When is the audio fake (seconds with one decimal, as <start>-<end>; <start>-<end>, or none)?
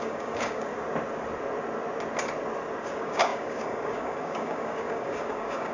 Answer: 0.0-0.7; 2.9-5.7